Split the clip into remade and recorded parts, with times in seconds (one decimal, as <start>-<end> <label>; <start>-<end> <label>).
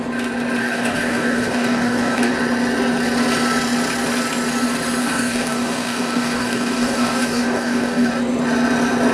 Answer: 0.0-0.6 recorded; 0.6-2.3 remade; 2.3-5.0 recorded; 5.0-8.1 remade; 8.1-9.1 recorded